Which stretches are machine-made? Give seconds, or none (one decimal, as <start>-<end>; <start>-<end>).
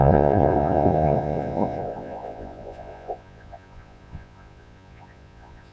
0.0-5.7